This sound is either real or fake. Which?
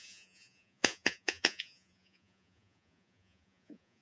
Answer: fake